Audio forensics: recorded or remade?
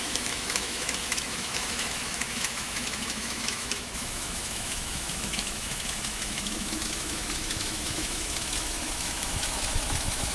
remade